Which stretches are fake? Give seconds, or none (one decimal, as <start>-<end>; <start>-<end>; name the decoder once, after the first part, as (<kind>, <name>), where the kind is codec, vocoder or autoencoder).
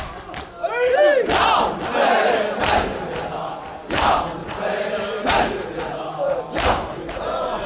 4.4-6.4 (vocoder, Vocos); 6.9-7.7